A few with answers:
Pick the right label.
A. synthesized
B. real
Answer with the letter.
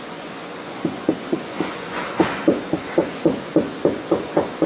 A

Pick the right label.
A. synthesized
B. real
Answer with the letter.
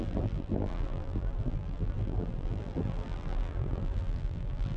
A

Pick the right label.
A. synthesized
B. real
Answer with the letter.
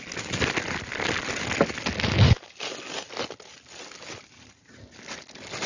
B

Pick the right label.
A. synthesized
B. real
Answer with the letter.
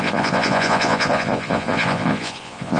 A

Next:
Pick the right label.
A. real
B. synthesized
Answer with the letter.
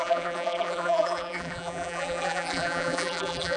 B